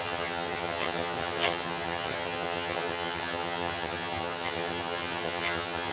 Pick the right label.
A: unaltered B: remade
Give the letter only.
B